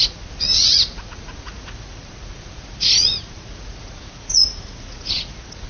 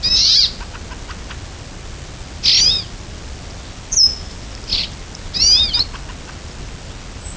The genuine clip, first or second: second